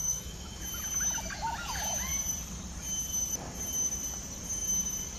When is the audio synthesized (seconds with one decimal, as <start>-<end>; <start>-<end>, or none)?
0.0-0.6